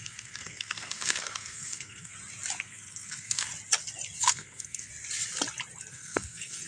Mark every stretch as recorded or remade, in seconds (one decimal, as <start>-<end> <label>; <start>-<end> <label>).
0.0-2.1 remade; 2.1-2.6 recorded; 2.6-3.5 remade; 3.5-4.2 recorded; 4.2-4.9 remade; 4.9-5.9 recorded; 5.9-6.7 remade